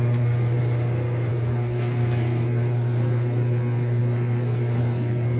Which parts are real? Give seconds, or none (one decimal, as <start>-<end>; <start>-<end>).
0.6-1.3